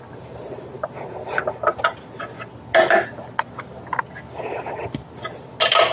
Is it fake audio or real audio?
real